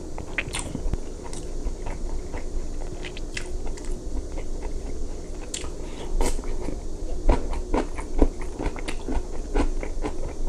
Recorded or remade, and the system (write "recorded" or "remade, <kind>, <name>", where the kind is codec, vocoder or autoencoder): recorded